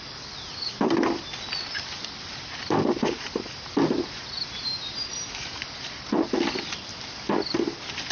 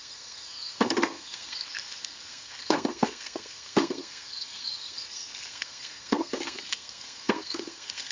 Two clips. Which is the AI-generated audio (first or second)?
second